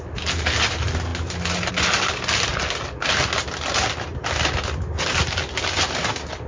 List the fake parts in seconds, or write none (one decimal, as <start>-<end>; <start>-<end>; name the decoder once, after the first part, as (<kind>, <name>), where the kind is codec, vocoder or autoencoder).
none